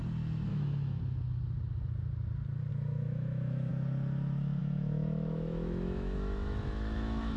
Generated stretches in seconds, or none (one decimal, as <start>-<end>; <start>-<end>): 0.5-1.0; 2.7-3.7; 4.6-7.4